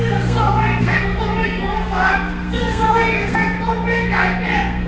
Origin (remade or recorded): remade